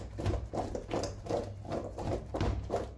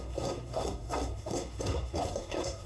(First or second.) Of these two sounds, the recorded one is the first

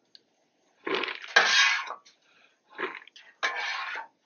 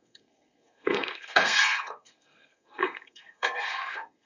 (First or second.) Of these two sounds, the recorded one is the first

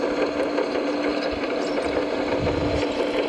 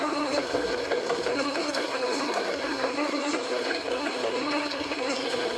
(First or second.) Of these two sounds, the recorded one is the first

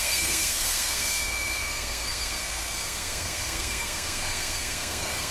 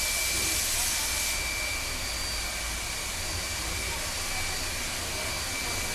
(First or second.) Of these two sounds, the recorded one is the second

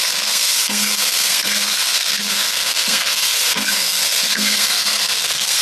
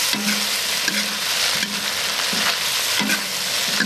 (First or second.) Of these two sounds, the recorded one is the second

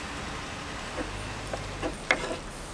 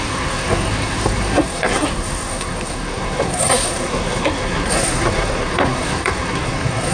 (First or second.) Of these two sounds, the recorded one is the first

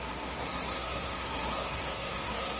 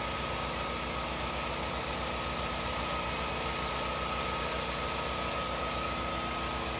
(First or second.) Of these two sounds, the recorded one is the second